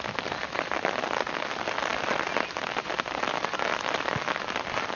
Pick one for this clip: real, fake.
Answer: real